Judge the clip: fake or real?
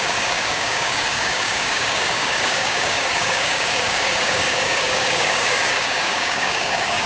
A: fake